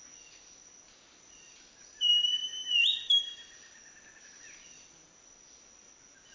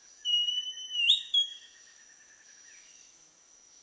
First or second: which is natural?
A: first